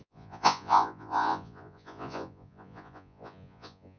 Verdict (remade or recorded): remade